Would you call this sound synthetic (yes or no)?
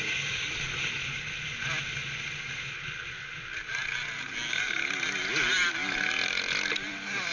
no